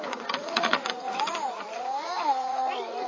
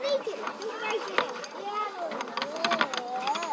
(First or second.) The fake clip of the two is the first